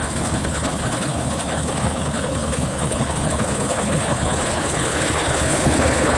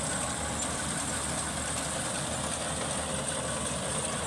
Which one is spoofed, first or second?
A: first